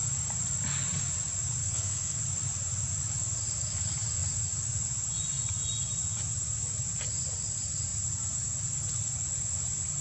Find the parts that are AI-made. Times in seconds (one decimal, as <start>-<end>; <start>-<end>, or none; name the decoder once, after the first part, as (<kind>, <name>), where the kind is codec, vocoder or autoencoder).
1.6-2.2 (codec, SNAC)